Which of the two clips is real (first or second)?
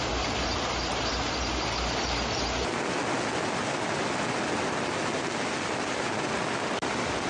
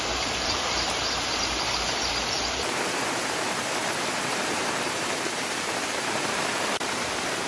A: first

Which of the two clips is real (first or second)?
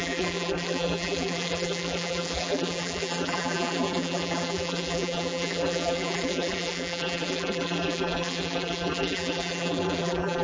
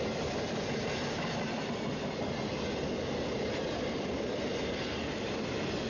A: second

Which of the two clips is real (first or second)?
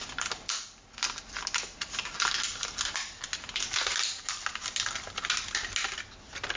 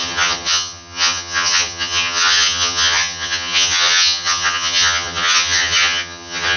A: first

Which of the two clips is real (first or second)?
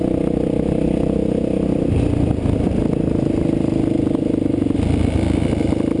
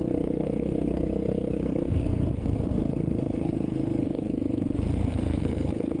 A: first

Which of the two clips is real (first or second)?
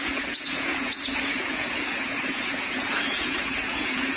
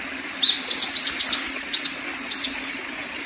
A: second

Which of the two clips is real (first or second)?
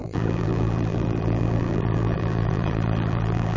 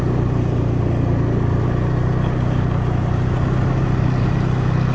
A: second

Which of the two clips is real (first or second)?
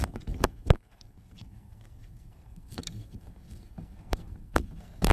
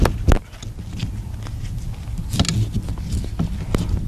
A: second